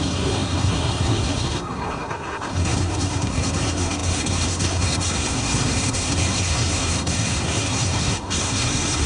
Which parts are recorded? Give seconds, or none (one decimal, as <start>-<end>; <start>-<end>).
none